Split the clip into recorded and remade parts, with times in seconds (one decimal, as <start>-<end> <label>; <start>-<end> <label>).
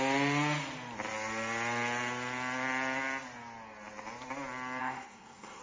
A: 0.0-4.8 recorded; 4.8-5.6 remade